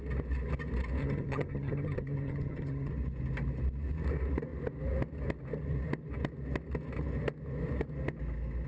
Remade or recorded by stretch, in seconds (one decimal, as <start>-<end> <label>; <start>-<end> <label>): 0.0-1.0 recorded; 1.0-2.9 remade; 2.9-8.7 recorded